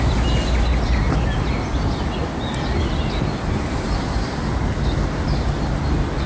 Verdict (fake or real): real